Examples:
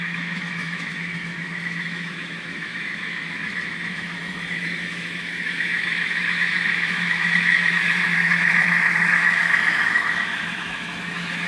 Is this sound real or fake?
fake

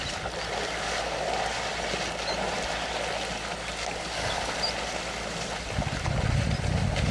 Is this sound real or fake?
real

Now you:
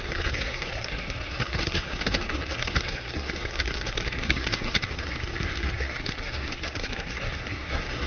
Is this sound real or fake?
fake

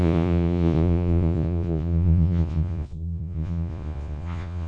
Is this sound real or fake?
fake